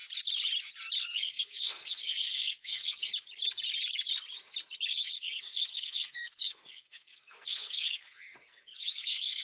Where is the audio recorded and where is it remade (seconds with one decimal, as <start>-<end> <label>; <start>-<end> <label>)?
0.0-1.0 recorded; 1.0-3.1 remade; 3.1-4.9 recorded; 4.9-9.4 remade